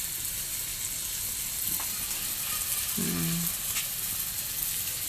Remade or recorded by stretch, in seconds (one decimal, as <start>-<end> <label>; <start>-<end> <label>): 0.0-5.1 recorded